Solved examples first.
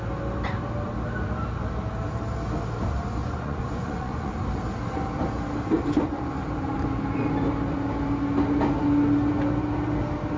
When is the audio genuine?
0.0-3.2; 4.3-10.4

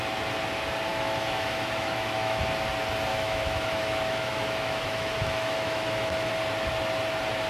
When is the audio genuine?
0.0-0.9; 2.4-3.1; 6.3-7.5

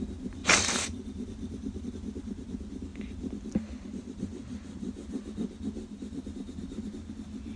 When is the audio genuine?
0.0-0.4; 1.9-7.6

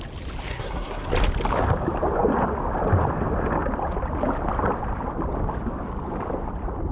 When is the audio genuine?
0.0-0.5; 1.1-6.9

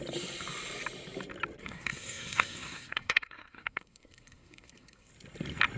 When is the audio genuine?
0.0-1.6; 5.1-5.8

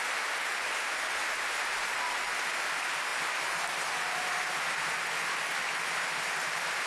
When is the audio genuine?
0.0-3.1; 4.5-6.9

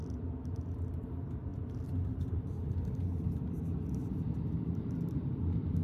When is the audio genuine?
0.0-5.8